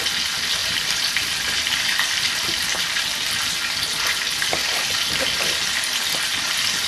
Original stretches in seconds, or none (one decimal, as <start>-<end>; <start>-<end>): 0.0-0.6; 3.0-4.6; 6.0-6.9